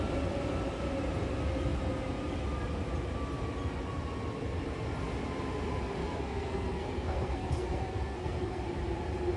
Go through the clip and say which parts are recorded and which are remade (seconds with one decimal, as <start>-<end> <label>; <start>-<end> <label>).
0.0-6.0 recorded; 6.0-8.6 remade; 8.6-9.4 recorded